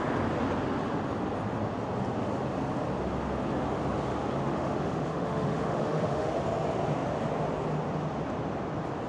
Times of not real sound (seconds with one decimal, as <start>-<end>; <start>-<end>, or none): 4.4-6.3